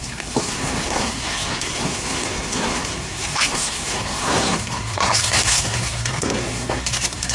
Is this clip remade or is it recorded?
remade